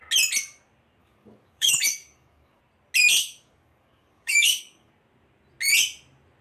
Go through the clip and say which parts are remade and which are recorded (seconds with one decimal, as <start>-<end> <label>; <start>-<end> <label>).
0.0-1.0 recorded; 1.0-2.6 remade; 2.6-3.2 recorded; 3.2-4.9 remade; 4.9-6.4 recorded